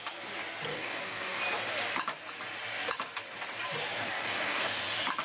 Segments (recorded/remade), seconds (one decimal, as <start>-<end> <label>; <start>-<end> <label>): 0.0-0.7 recorded; 0.7-1.4 remade; 1.4-4.1 recorded; 4.1-4.8 remade; 4.8-5.2 recorded